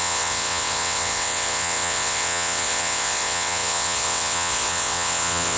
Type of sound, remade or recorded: remade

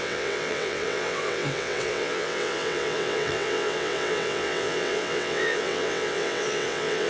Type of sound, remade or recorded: remade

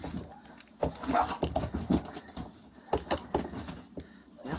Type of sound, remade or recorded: recorded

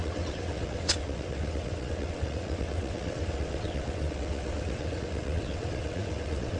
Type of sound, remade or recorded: remade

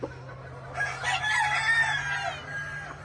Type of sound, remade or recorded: recorded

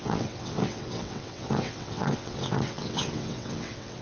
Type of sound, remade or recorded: remade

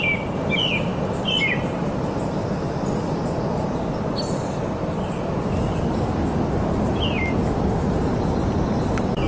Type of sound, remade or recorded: recorded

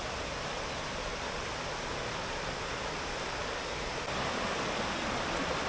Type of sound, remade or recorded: recorded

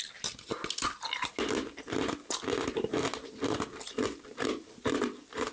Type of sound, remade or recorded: recorded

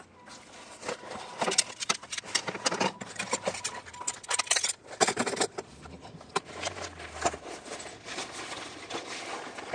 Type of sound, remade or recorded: recorded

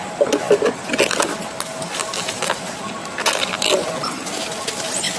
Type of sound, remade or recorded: recorded